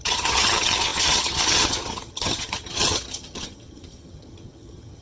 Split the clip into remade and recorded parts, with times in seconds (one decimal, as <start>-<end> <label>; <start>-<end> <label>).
0.0-5.0 remade